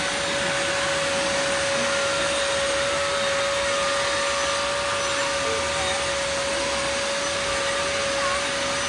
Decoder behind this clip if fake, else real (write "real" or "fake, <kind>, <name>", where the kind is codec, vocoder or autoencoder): real